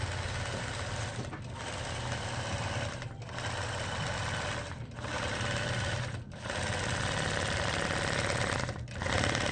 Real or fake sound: real